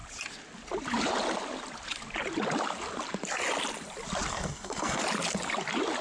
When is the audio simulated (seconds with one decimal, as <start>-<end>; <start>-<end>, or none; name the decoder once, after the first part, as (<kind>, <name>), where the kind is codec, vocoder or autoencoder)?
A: 4.3-5.0 (codec, SNAC)